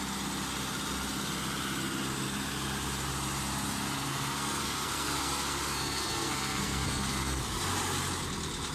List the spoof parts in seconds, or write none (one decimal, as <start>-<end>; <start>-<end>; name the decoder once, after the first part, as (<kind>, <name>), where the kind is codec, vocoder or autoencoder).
4.1-7.4 (codec, SNAC)